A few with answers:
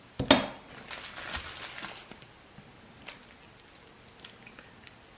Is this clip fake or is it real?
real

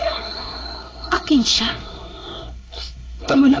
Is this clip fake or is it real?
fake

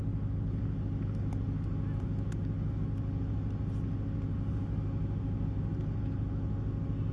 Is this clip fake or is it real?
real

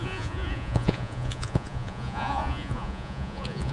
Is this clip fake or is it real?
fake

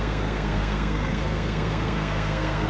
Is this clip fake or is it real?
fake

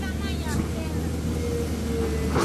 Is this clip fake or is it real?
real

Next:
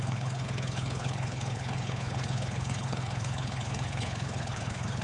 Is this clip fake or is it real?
fake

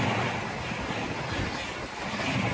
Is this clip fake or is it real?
real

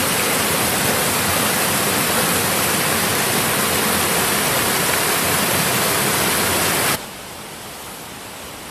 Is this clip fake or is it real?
real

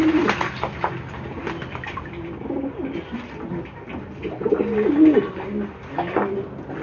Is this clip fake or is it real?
real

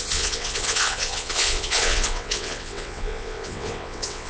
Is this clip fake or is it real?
fake